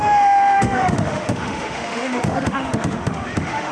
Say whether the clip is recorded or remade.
remade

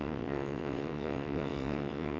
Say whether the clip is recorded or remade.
remade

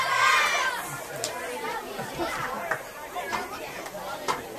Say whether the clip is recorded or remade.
remade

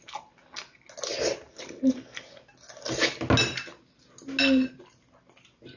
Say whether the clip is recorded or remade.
recorded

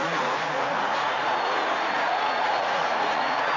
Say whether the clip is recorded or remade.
remade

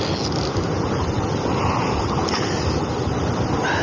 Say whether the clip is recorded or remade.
recorded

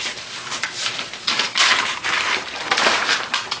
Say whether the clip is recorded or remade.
remade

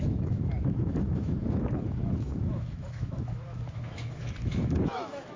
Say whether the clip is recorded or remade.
remade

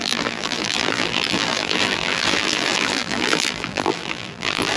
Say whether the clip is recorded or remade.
remade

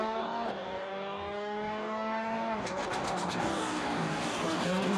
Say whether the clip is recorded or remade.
remade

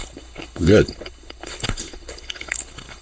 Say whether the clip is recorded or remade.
remade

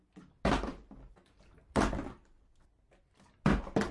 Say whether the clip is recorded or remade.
recorded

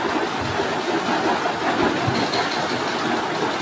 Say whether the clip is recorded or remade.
recorded